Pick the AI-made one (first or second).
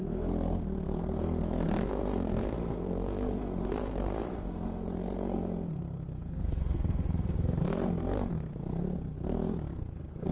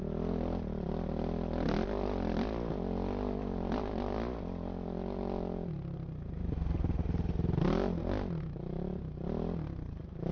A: first